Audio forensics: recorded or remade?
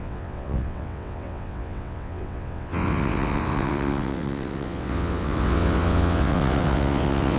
remade